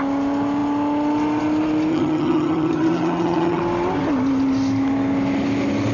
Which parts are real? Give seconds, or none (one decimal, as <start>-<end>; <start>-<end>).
0.0-1.9; 3.6-5.9